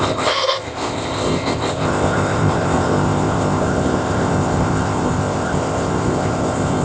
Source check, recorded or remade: remade